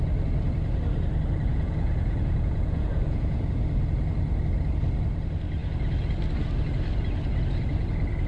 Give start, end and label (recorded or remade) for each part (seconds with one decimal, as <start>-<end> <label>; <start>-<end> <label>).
0.0-1.5 recorded; 1.5-3.4 remade; 3.4-8.3 recorded